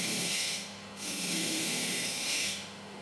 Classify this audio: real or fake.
fake